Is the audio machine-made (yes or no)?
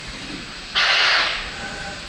no